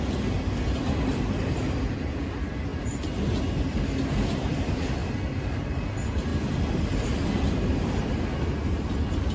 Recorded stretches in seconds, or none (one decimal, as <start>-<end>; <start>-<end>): 0.0-9.3